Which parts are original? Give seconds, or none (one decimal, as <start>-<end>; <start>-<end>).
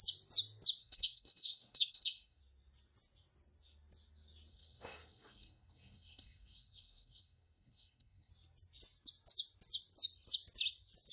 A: 0.0-0.8; 2.4-4.5; 8.3-11.1